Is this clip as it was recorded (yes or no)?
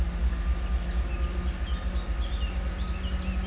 yes